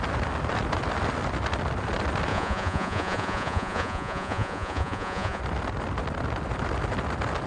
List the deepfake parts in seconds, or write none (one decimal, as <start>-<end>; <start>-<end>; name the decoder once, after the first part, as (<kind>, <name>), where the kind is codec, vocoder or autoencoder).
2.3-5.4 (vocoder, Vocos)